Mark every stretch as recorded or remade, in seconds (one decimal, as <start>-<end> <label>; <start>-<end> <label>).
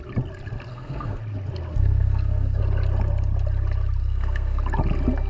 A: 0.0-0.7 recorded; 0.7-1.2 remade; 1.2-1.7 recorded; 1.7-2.6 remade; 2.6-4.0 recorded; 4.0-4.6 remade; 4.6-5.3 recorded